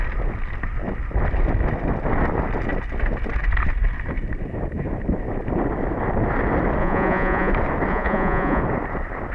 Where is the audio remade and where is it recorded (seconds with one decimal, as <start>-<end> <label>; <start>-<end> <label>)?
0.0-6.8 recorded; 6.8-7.5 remade; 7.5-7.9 recorded; 7.9-8.6 remade; 8.6-9.3 recorded